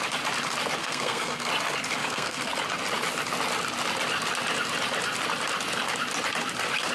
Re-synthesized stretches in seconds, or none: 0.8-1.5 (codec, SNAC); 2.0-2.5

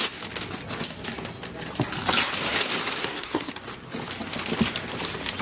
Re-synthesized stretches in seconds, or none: 3.0-3.5 (codec, SNAC)

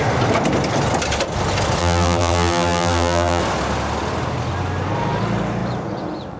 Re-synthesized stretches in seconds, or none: 1.8-3.4 (vocoder, BigVGAN v2)